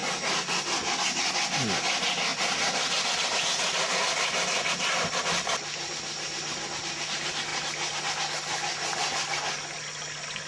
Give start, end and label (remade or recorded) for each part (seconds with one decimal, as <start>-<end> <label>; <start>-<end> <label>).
0.0-10.5 recorded